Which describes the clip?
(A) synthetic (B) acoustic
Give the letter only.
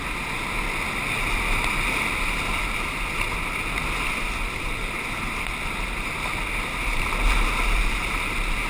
B